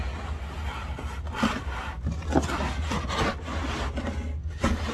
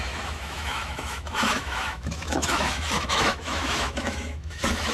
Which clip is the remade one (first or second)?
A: second